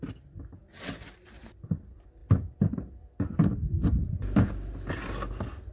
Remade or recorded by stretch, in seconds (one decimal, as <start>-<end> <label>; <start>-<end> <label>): 0.0-2.2 recorded; 2.2-5.7 remade